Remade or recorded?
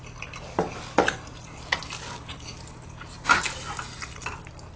recorded